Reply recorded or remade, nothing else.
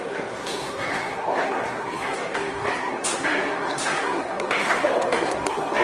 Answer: remade